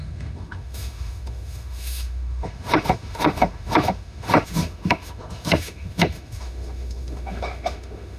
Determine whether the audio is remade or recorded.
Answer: remade